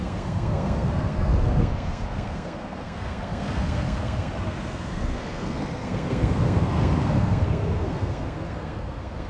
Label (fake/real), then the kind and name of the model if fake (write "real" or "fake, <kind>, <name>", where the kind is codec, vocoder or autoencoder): fake, codec, SNAC